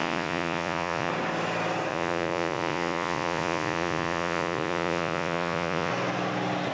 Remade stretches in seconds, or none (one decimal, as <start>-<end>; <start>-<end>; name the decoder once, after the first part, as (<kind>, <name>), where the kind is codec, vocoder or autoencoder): 0.0-1.1 (vocoder, Vocos); 1.9-5.9